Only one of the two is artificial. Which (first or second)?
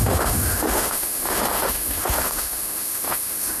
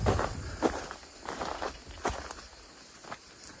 first